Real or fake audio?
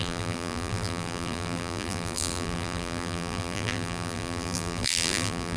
fake